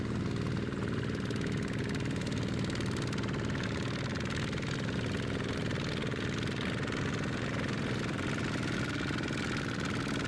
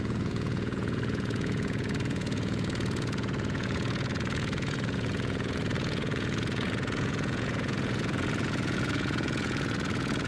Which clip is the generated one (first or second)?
second